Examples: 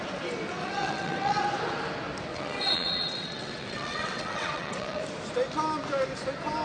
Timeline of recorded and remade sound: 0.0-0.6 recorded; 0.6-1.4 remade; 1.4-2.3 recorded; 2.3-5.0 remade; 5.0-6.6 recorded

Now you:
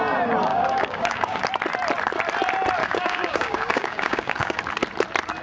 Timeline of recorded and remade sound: 0.0-0.5 recorded; 0.5-1.4 remade; 1.4-2.8 recorded; 2.8-4.6 remade; 4.6-5.4 recorded

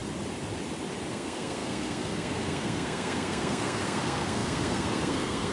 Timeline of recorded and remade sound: 0.0-1.1 recorded; 1.1-5.5 remade

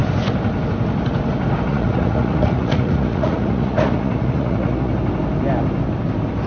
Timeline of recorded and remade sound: 0.0-1.7 recorded; 1.7-4.9 remade; 4.9-6.5 recorded

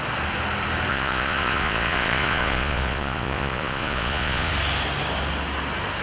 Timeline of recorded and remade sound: 0.0-0.9 recorded; 0.9-4.5 remade; 4.5-6.0 recorded

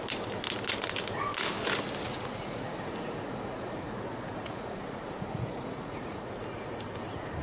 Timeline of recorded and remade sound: 0.0-2.1 recorded; 2.1-6.3 remade; 6.3-7.4 recorded

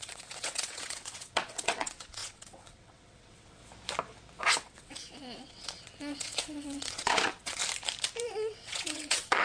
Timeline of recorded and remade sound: 0.0-3.6 remade; 3.6-4.5 recorded; 4.5-7.6 remade; 7.6-8.2 recorded; 8.2-9.4 remade